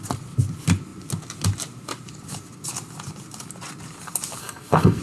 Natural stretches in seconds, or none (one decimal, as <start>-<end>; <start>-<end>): 0.0-4.4